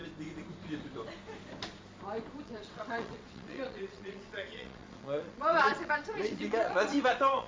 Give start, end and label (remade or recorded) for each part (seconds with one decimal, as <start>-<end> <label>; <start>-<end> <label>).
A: 0.0-2.4 recorded; 2.4-7.5 remade